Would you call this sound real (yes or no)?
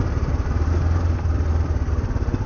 no